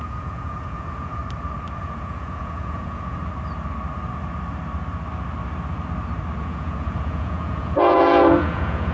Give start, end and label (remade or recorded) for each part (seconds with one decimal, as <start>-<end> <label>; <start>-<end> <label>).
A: 0.0-1.2 remade; 1.2-1.8 recorded; 1.8-3.2 remade; 3.2-6.4 recorded; 6.4-8.9 remade